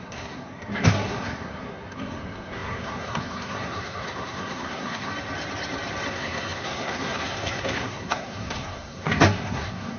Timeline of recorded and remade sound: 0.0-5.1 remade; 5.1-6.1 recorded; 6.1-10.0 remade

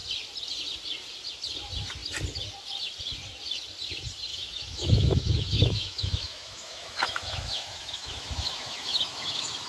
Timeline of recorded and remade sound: 0.0-4.3 recorded; 4.3-9.7 remade